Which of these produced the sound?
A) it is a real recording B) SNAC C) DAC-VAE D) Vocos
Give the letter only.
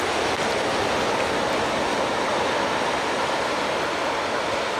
A